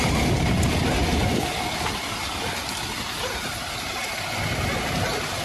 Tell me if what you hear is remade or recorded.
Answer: recorded